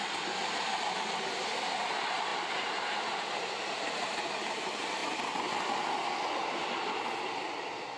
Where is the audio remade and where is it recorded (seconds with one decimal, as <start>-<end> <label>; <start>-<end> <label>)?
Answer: 0.0-2.3 recorded; 2.3-4.2 remade; 4.2-8.0 recorded

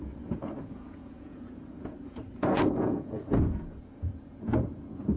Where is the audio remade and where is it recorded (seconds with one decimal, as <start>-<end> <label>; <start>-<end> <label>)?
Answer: 0.0-5.2 remade

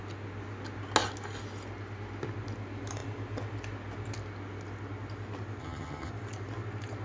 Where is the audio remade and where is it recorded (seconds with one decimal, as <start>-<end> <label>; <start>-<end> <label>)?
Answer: 0.0-5.6 recorded; 5.6-6.1 remade; 6.1-7.0 recorded

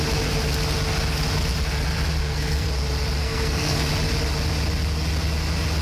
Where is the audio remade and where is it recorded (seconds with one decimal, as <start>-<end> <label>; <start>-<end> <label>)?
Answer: 0.0-2.2 recorded; 2.2-2.7 remade; 2.7-3.2 recorded; 3.2-3.9 remade; 3.9-5.8 recorded

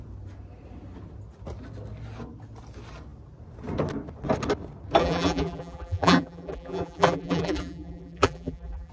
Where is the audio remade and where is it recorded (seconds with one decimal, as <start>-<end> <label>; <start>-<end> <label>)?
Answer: 0.0-5.0 recorded; 5.0-8.9 remade